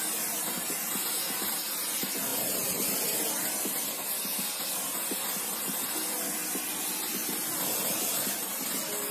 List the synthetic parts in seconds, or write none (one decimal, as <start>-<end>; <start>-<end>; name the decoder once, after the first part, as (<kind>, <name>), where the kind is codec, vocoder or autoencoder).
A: none

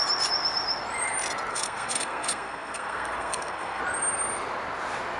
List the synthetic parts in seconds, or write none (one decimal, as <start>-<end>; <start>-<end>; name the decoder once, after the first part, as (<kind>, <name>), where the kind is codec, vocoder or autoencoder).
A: 1.5-3.8 (codec, SNAC)